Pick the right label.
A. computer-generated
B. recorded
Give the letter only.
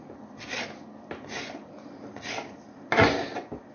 B